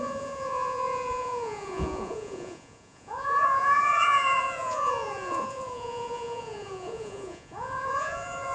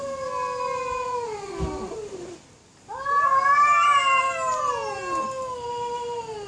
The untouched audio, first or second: second